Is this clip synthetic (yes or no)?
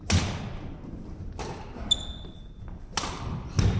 no